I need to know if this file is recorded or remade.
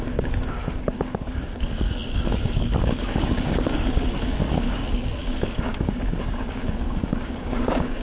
remade